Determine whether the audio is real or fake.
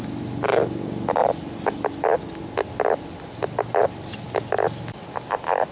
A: real